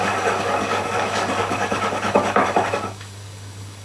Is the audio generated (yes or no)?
yes